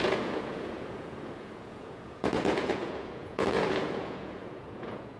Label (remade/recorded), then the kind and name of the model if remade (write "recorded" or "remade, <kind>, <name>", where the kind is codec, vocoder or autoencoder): remade, vocoder, Vocos